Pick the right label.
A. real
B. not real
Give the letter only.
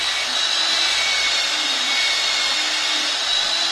A